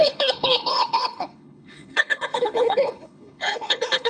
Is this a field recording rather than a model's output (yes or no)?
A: no